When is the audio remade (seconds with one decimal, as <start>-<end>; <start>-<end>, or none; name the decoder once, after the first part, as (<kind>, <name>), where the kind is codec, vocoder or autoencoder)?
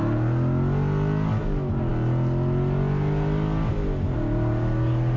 none